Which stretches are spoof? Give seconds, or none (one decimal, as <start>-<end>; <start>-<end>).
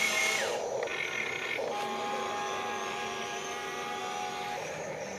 none